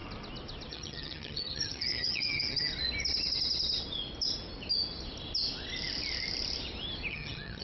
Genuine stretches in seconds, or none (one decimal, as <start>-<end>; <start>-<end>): 0.0-0.7; 2.7-7.1